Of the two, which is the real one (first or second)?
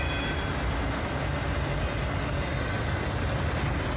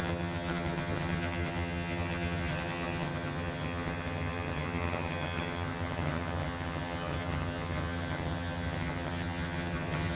first